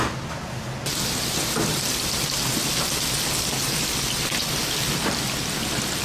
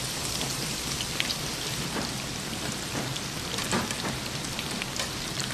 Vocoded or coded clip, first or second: second